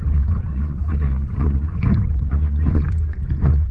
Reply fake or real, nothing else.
fake